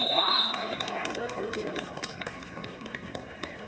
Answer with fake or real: fake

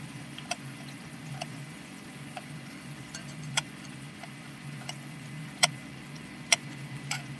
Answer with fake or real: fake